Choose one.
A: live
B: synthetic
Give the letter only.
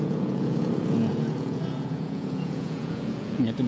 B